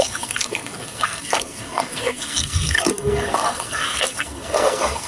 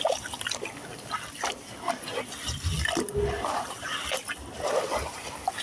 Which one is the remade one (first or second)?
first